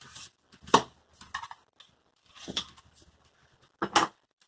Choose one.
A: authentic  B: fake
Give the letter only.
A